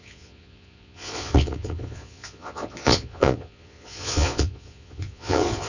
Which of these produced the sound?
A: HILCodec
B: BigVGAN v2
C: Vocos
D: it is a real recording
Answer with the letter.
C